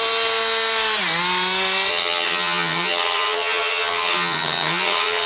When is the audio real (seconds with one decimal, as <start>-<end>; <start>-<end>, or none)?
0.0-1.9